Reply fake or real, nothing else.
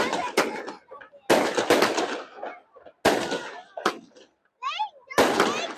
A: real